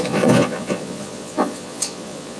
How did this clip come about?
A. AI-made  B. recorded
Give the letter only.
A